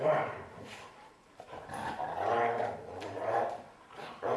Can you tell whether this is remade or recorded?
remade